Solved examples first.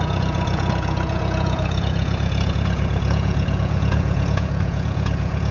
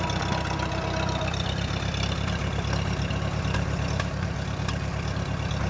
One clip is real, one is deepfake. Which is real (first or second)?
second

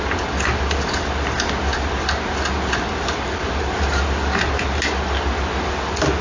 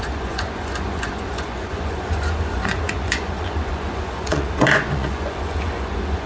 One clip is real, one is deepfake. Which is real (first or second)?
first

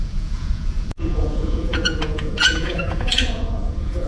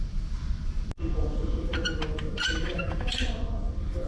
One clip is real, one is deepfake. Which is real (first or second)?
second